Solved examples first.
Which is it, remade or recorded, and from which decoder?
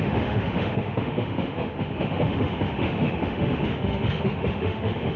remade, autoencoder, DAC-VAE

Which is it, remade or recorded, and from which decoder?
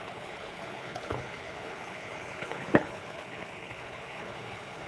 remade, codec, HILCodec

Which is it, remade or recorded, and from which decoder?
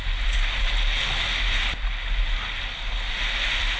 recorded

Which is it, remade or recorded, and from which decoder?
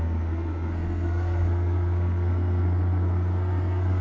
remade, codec, SNAC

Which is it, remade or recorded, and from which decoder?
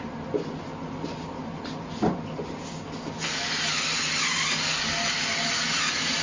recorded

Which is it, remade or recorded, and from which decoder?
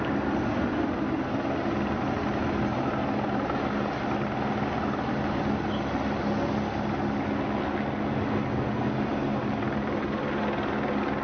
recorded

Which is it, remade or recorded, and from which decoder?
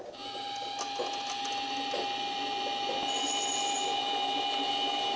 recorded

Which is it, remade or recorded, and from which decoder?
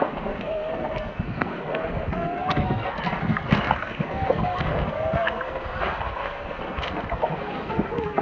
remade, codec, SNAC